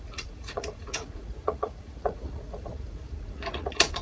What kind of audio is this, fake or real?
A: fake